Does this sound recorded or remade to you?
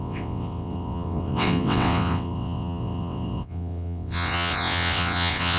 remade